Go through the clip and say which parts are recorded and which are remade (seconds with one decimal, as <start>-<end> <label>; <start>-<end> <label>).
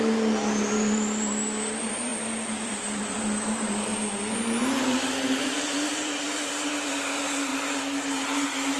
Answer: 0.0-3.9 remade; 3.9-4.8 recorded; 4.8-7.5 remade; 7.5-8.8 recorded